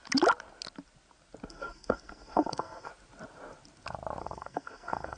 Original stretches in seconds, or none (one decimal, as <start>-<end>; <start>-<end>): 0.0-1.5; 2.9-4.2